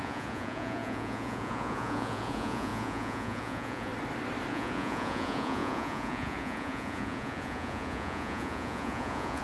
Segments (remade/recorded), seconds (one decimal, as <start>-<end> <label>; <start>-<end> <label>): 0.0-3.9 remade; 3.9-4.5 recorded; 4.5-9.4 remade